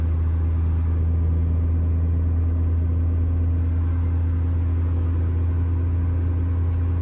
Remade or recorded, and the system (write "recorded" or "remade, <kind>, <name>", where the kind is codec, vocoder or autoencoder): recorded